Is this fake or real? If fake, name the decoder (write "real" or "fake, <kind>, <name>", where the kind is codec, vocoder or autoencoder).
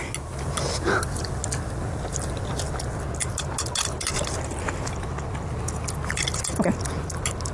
real